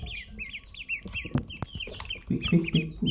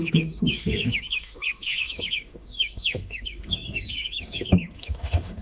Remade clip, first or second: second